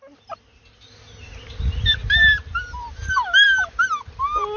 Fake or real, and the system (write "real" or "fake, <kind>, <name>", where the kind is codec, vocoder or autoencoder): real